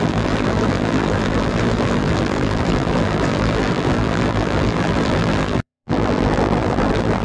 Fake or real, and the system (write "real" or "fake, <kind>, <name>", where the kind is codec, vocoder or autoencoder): fake, vocoder, BigVGAN v2